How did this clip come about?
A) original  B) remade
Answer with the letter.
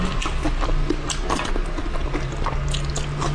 A